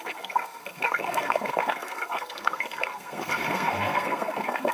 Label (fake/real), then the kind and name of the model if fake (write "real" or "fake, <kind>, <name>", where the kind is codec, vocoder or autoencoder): fake, codec, SNAC